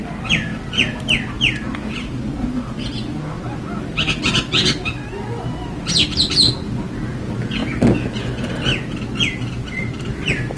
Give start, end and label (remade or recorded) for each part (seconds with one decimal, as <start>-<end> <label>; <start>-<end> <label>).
0.0-10.6 recorded